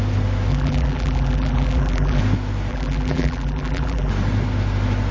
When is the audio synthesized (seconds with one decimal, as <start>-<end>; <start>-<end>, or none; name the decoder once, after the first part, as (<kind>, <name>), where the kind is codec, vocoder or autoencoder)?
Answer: 0.5-2.2 (vocoder, BigVGAN v2); 2.7-4.1